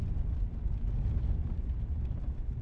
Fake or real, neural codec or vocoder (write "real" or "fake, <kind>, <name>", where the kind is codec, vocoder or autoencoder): real